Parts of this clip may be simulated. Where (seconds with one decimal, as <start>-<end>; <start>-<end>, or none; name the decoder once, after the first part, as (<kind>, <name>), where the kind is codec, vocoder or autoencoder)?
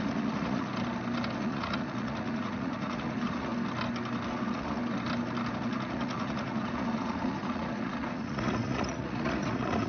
0.0-0.7 (vocoder, Vocos); 1.4-3.5; 4.3-4.8; 5.6-9.9